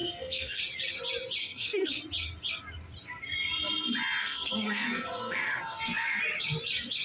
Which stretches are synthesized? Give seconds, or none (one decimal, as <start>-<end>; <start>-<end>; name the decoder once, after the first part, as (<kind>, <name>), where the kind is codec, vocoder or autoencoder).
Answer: 0.0-0.6 (codec, SNAC); 1.4-2.0; 4.2-6.2